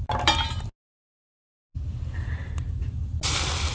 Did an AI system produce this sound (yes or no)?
no